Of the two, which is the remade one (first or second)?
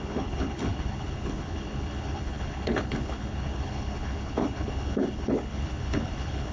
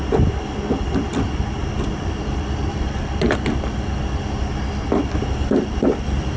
first